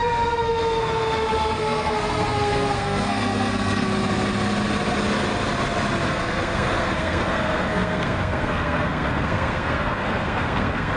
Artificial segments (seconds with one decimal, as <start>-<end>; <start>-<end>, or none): 0.0-3.9; 6.1-11.0

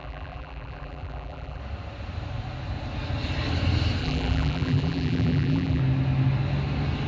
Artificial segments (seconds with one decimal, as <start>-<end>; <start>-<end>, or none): 0.0-1.6; 4.0-5.8

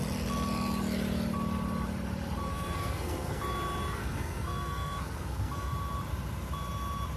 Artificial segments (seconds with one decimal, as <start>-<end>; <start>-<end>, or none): 2.5-3.4; 4.0-5.7

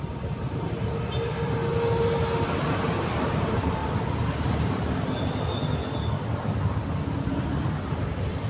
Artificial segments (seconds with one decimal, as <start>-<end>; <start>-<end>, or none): 0.0-1.6; 2.5-3.8; 7.4-8.5

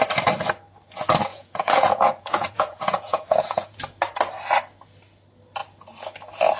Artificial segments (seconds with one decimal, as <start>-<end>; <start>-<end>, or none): 1.3-3.8

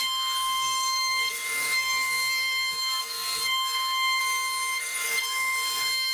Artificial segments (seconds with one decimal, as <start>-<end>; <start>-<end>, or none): 0.0-4.2; 4.8-6.1

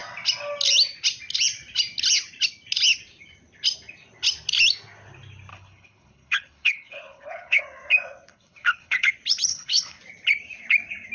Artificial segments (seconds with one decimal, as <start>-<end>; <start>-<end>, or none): 5.5-7.6; 8.3-9.1; 9.5-10.0

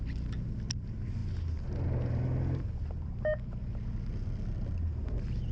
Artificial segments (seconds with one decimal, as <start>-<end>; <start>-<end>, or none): none